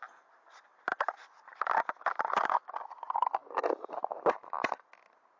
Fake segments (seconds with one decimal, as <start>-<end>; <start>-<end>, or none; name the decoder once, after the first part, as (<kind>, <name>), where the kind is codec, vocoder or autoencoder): none